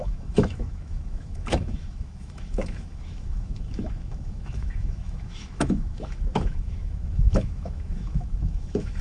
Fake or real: fake